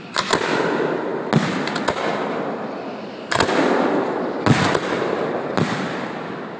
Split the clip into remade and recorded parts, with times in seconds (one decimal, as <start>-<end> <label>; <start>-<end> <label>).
0.0-6.6 recorded